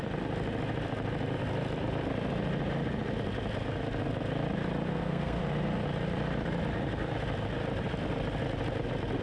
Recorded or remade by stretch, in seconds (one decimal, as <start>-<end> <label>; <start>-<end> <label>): 0.0-4.9 recorded; 4.9-5.4 remade; 5.4-9.2 recorded

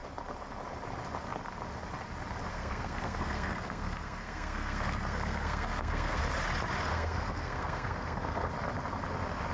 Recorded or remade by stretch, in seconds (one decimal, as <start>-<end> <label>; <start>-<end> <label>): 0.0-2.5 recorded; 2.5-6.2 remade; 6.2-6.9 recorded; 6.9-8.5 remade; 8.5-9.5 recorded

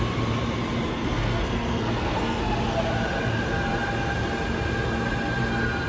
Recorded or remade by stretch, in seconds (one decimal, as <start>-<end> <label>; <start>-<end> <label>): 0.0-0.9 recorded; 0.9-2.4 remade; 2.4-5.9 recorded

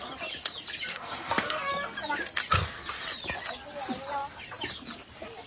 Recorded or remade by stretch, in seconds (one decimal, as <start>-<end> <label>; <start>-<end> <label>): 0.0-0.9 recorded; 0.9-1.7 remade; 1.7-5.5 recorded

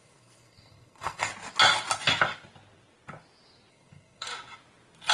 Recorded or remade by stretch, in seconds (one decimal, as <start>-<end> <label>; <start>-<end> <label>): 0.0-1.3 remade; 1.3-3.7 recorded; 3.7-4.3 remade; 4.3-5.1 recorded

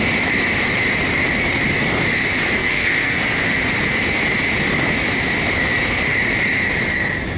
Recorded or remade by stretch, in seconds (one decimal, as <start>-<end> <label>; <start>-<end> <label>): 0.0-2.6 recorded; 2.6-3.2 remade; 3.2-7.4 recorded

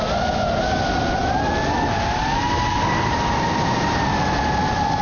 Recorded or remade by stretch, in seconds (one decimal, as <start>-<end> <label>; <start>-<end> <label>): 0.0-5.0 recorded